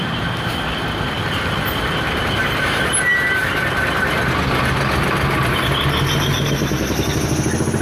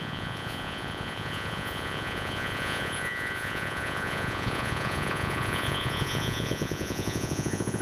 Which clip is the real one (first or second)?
first